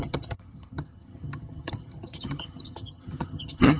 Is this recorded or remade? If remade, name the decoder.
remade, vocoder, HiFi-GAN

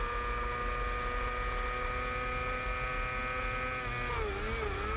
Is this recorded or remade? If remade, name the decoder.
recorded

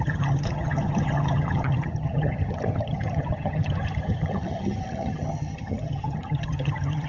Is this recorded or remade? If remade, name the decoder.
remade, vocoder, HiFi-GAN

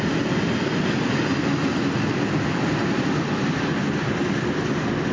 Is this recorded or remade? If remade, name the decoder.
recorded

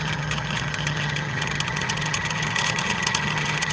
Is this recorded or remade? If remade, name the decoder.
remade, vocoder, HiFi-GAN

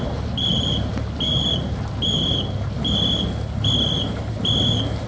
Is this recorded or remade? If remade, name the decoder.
recorded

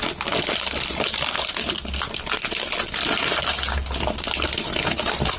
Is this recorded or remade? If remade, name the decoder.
recorded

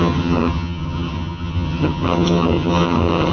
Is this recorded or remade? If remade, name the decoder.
remade, vocoder, HiFi-GAN